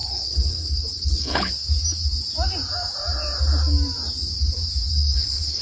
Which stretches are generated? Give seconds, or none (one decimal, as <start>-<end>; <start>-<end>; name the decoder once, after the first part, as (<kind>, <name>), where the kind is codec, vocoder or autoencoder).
0.0-1.5 (codec, HILCodec); 4.9-5.6